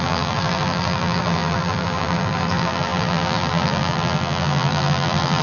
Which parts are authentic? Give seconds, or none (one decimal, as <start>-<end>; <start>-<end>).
none